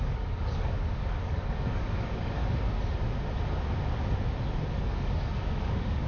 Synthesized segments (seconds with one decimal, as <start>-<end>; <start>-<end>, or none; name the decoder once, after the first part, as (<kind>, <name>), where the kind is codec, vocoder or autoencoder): 0.0-2.4 (codec, DAC); 4.7-6.1